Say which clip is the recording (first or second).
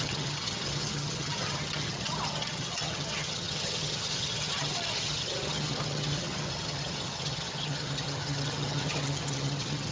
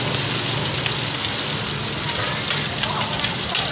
second